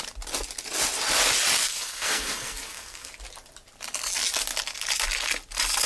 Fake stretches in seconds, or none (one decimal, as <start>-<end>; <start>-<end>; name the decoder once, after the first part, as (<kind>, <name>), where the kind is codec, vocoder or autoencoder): 1.6-3.1 (codec, SNAC)